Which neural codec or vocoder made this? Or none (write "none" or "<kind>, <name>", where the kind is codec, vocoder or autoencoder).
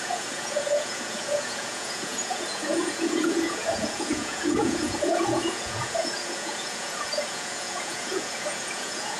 vocoder, Vocos